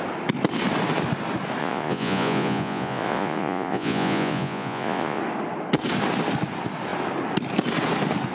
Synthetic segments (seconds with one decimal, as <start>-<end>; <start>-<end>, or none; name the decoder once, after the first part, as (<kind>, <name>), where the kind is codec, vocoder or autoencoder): 1.6-5.2 (vocoder, Vocos)